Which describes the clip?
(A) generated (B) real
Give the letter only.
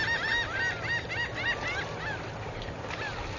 B